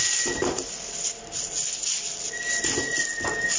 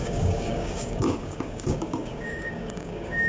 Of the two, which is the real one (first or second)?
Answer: first